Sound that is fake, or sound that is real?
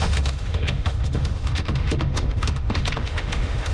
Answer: fake